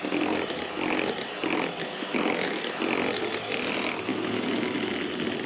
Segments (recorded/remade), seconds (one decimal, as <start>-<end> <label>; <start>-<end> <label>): 0.0-1.8 recorded; 1.8-2.8 remade; 2.8-4.1 recorded; 4.1-4.9 remade; 4.9-5.5 recorded